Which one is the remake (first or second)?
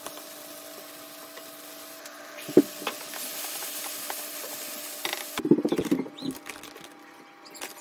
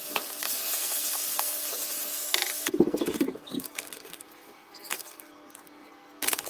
second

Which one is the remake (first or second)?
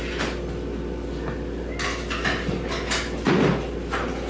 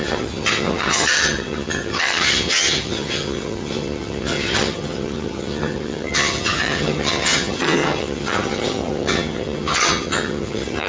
second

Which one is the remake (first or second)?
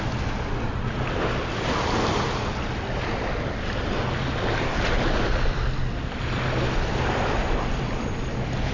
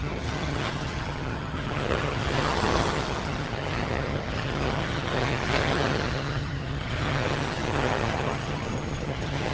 second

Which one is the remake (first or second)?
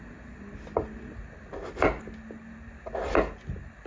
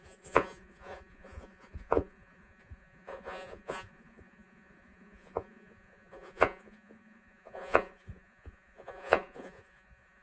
second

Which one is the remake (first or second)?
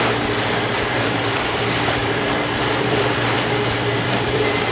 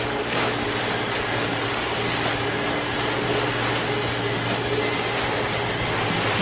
first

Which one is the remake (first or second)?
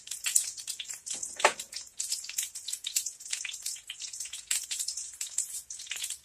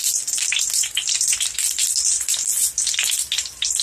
first